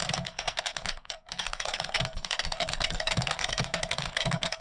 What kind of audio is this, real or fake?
fake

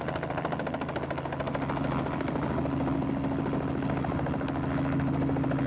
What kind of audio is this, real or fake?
real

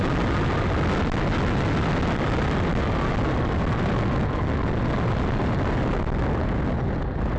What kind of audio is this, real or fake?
real